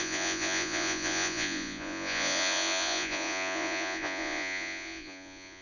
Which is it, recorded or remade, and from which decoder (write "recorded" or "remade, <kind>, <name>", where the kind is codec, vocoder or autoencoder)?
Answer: remade, vocoder, Vocos